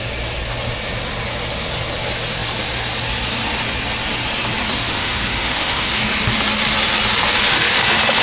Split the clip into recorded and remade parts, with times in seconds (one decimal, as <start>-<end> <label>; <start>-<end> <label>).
0.0-4.9 recorded; 4.9-5.9 remade; 5.9-8.2 recorded